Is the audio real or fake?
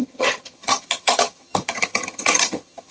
fake